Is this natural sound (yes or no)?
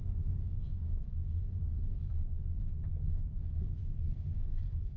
no